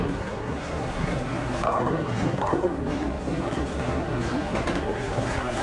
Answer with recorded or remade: remade